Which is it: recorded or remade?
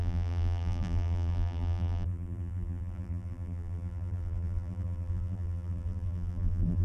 remade